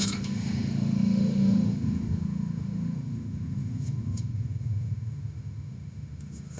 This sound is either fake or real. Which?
fake